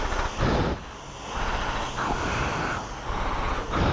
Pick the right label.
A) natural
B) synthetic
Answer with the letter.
A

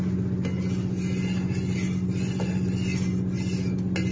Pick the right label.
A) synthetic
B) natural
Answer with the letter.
B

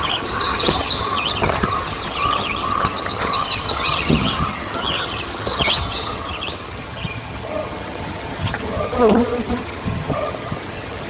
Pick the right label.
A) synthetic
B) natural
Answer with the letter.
A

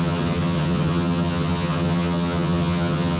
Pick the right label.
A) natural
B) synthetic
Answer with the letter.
B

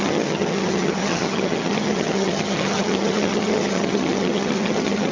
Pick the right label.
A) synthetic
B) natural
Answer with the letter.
A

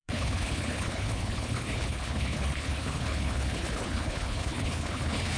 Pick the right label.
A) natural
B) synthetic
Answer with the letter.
B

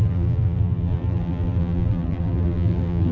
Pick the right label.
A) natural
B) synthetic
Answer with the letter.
B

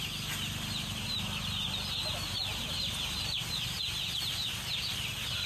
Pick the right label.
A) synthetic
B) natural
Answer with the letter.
B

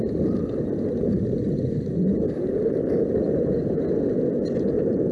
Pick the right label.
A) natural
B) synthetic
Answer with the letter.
A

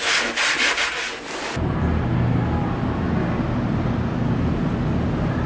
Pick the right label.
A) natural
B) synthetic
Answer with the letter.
A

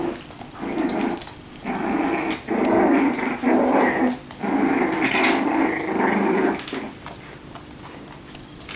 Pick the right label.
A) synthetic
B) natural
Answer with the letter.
B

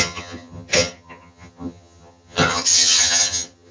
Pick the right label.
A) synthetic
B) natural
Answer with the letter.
A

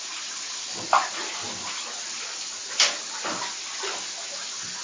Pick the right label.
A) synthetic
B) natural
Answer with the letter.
B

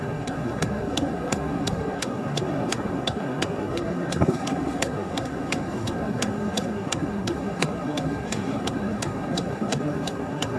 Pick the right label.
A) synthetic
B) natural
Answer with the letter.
A